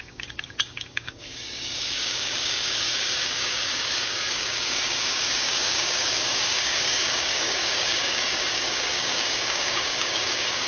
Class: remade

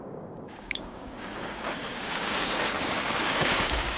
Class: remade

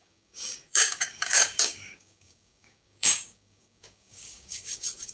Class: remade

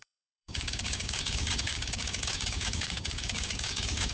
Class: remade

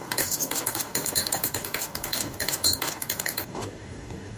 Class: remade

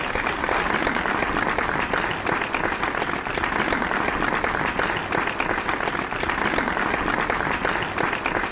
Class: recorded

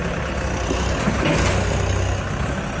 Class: recorded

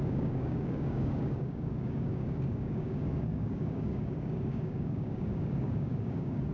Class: remade